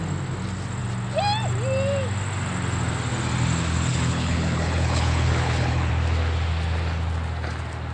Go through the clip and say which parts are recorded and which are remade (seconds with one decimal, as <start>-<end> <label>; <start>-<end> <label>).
0.0-3.9 recorded; 3.9-5.9 remade; 5.9-7.9 recorded